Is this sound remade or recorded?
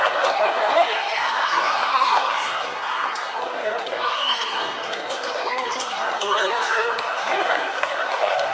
remade